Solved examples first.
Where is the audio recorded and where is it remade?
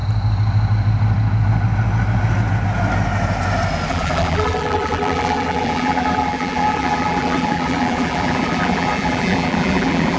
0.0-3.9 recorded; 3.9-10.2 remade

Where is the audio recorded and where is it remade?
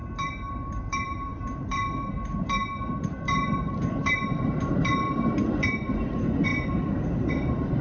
0.0-6.5 remade; 6.5-7.3 recorded; 7.3-7.8 remade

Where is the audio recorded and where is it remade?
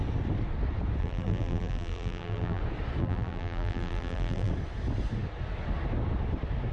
0.0-1.0 recorded; 1.0-2.6 remade; 2.6-3.0 recorded; 3.0-4.5 remade; 4.5-6.7 recorded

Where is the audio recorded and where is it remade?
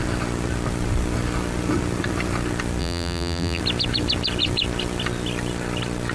0.0-2.8 recorded; 2.8-3.6 remade; 3.6-6.1 recorded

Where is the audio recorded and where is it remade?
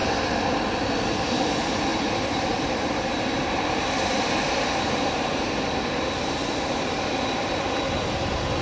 0.0-0.7 recorded; 0.7-8.6 remade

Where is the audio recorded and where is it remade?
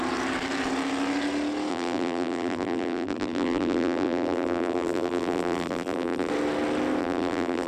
0.0-1.7 recorded; 1.7-6.3 remade; 6.3-7.0 recorded; 7.0-7.7 remade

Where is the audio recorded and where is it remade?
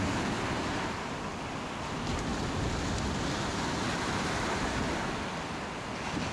0.0-6.3 recorded